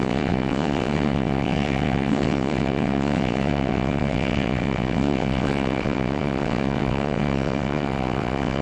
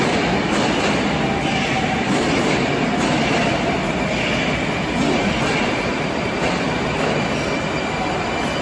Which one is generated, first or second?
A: first